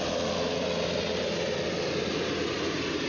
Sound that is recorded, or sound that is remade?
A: recorded